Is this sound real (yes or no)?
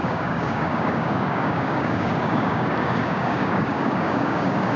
no